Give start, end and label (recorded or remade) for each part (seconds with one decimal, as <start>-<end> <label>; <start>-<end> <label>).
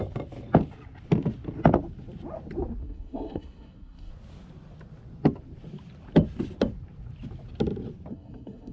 0.0-2.8 recorded; 2.8-4.1 remade; 4.1-8.1 recorded; 8.1-8.7 remade